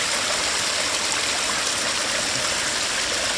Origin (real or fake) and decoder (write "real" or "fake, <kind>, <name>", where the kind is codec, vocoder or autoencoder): real